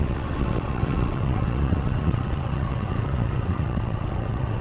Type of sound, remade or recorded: remade